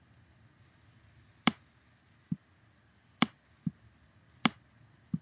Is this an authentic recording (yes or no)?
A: yes